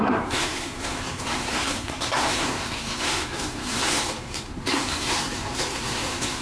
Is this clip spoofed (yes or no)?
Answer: yes